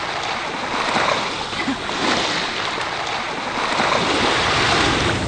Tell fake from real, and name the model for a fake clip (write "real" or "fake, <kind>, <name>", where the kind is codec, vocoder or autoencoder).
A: real